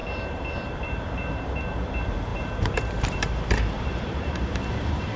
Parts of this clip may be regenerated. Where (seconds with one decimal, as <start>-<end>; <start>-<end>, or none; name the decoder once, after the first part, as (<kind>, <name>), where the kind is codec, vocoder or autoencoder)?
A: 0.0-5.2 (vocoder, BigVGAN v2)